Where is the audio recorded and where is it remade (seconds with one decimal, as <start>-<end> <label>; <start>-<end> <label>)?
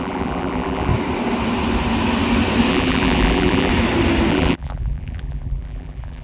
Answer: 0.0-0.9 remade; 0.9-2.7 recorded; 2.7-3.7 remade; 3.7-4.3 recorded; 4.3-6.2 remade